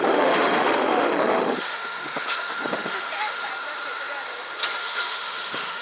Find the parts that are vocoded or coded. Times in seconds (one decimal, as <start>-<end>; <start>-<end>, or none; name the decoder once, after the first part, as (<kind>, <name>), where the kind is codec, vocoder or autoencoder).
0.0-3.5 (autoencoder, DAC-VAE); 4.8-5.8